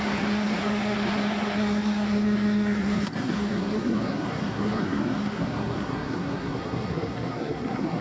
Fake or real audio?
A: fake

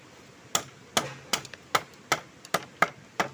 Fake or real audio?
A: real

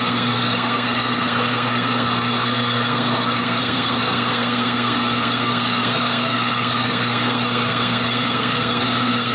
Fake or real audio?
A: fake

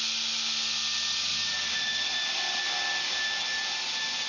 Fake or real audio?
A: real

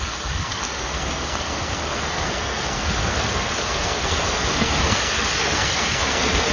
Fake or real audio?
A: fake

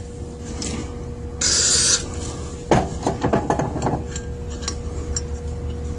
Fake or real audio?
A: real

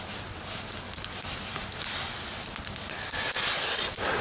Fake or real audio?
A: real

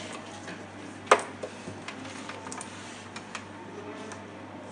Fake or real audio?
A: real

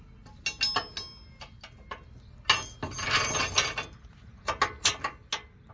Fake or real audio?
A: real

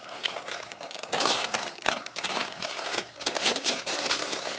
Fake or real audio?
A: fake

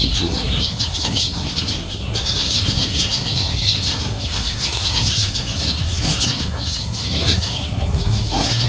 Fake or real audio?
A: fake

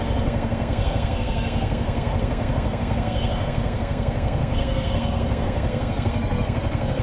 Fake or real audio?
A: fake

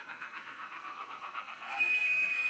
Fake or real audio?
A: fake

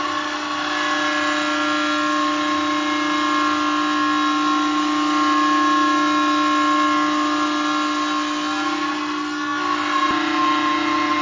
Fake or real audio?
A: real